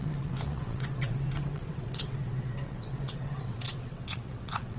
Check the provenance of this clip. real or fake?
fake